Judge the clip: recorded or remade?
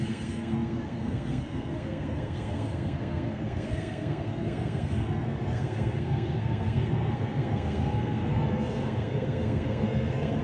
remade